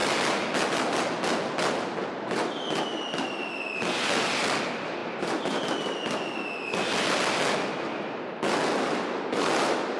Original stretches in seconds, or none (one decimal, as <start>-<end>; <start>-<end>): 0.0-10.0